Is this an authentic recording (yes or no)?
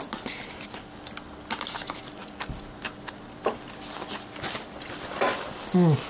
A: yes